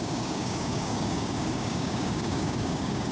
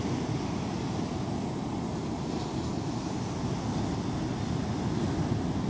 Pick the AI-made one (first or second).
first